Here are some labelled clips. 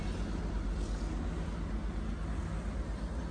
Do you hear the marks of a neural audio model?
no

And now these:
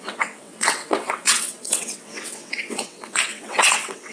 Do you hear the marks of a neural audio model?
yes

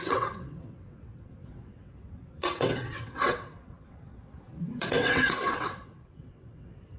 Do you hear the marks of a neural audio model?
yes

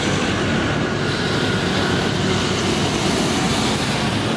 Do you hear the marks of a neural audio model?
no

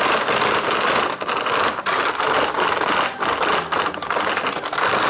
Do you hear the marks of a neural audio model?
no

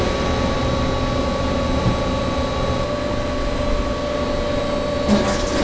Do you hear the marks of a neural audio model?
no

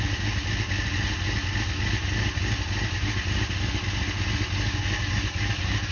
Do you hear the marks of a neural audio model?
no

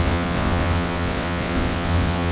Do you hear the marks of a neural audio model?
yes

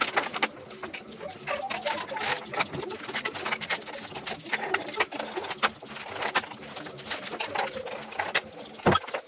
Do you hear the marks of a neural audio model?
no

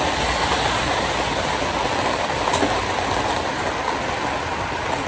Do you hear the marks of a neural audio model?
no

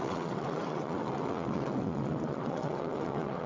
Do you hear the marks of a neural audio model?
yes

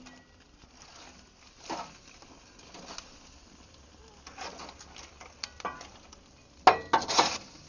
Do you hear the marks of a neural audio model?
no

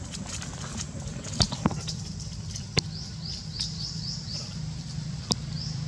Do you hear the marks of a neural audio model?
no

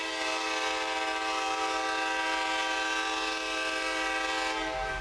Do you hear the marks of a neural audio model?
no